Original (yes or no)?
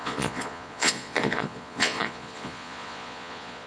no